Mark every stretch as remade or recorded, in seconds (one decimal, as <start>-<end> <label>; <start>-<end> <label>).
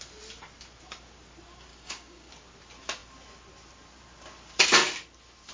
0.0-1.7 recorded; 1.7-2.3 remade; 2.3-5.5 recorded